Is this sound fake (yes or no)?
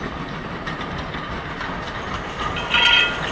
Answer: no